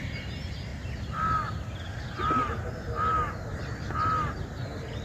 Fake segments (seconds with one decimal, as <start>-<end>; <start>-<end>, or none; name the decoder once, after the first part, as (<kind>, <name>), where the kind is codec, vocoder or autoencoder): none

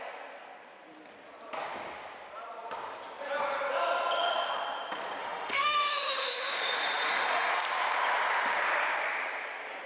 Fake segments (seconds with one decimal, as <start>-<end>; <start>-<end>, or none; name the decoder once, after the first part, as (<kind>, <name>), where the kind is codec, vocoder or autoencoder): 5.2-7.5 (autoencoder, DAC-VAE)

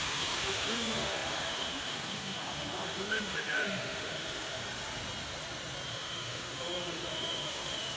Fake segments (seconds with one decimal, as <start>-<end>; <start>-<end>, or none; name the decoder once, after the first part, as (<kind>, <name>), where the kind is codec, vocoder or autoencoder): 0.0-4.6 (autoencoder, DAC-VAE); 5.9-8.0

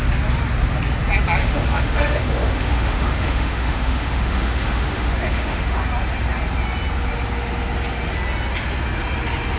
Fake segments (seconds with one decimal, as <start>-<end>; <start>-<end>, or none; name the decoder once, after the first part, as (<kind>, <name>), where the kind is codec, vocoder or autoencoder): 1.4-5.8 (autoencoder, DAC-VAE)